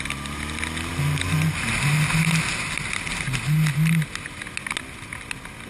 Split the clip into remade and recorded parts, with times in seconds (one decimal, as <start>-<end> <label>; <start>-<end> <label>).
0.0-5.7 recorded